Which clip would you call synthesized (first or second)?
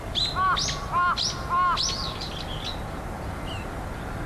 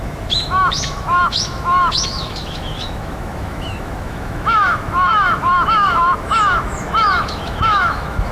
second